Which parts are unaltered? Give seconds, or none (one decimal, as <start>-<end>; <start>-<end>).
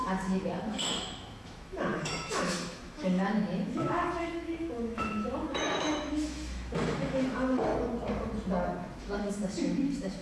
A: 7.7-9.0